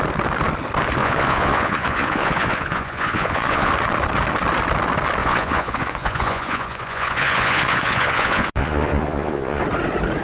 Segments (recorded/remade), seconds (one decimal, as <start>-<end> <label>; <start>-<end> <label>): 0.0-1.0 recorded; 1.0-3.7 remade; 3.7-5.2 recorded; 5.2-9.6 remade; 9.6-10.2 recorded